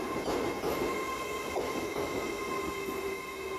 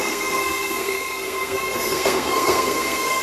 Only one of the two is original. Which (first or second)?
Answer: first